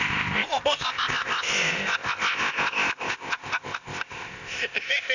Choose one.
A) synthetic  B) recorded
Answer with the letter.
A